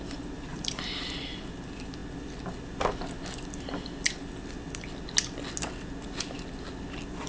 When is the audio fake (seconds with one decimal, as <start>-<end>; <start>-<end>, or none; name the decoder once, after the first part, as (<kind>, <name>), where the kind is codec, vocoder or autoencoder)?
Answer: 0.5-1.4 (vocoder, BigVGAN v2)